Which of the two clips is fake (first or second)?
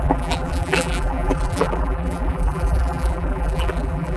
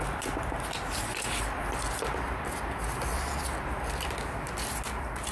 first